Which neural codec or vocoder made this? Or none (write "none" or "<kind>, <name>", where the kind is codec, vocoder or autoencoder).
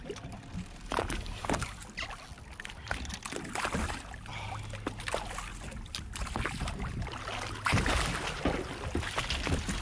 none